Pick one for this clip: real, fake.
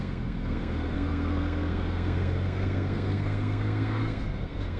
fake